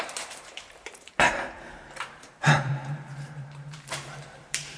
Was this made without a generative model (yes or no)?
no